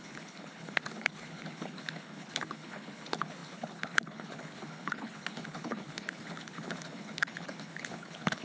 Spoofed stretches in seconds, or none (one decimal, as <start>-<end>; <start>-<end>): 0.0-8.4